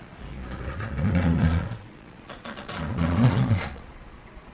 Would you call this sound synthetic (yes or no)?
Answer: yes